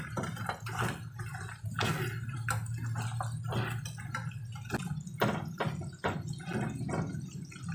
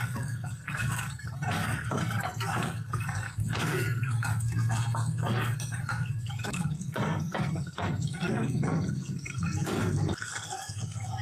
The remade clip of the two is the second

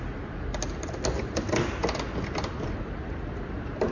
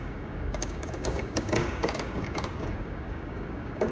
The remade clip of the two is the second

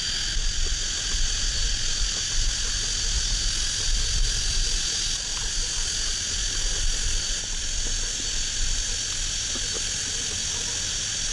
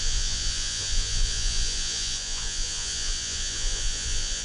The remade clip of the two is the second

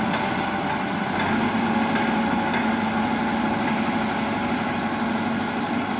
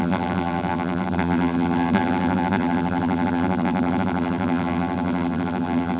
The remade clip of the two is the second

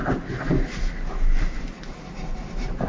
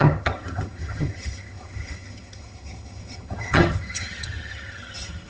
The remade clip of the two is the second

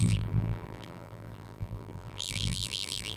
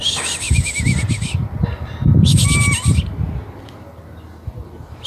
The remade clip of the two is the first